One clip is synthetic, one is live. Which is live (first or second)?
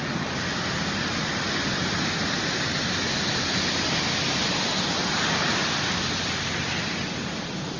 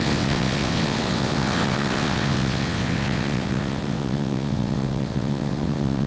first